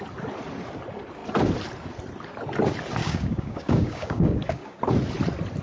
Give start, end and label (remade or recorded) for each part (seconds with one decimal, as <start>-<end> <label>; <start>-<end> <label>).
0.0-3.0 recorded; 3.0-4.8 remade; 4.8-5.6 recorded